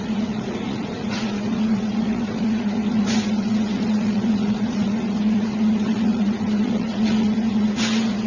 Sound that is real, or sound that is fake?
fake